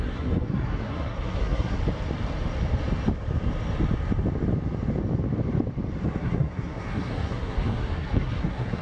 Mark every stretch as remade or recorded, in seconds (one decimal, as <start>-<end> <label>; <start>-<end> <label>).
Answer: 0.0-1.8 remade; 1.8-6.2 recorded; 6.2-8.8 remade